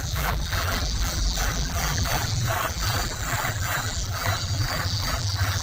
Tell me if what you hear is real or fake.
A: fake